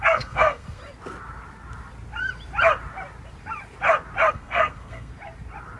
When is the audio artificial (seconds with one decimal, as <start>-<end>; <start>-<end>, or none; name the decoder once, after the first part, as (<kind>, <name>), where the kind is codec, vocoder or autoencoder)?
0.0-0.8 (codec, SNAC); 4.3-5.1